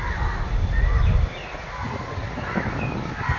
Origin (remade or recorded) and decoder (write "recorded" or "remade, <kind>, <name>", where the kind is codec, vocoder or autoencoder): recorded